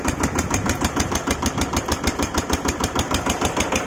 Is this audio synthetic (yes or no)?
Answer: yes